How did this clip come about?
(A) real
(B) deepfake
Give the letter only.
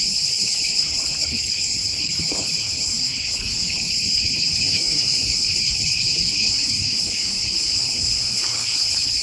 B